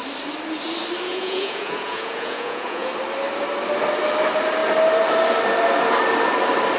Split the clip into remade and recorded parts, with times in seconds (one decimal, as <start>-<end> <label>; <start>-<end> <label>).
0.0-1.1 recorded; 1.1-2.9 remade; 2.9-6.8 recorded